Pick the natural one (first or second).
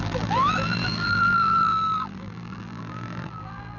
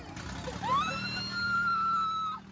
second